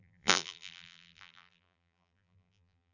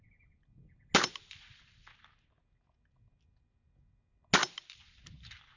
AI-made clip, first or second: first